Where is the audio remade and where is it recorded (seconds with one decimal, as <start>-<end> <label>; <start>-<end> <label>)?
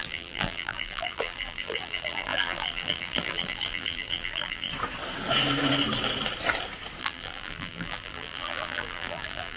0.0-4.7 remade; 4.7-7.0 recorded; 7.0-9.6 remade